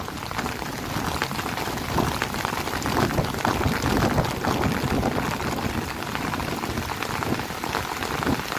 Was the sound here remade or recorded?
recorded